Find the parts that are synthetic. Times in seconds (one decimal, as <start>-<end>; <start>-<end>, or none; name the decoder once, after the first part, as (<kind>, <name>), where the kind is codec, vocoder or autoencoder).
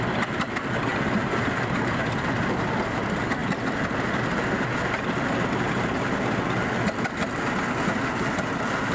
none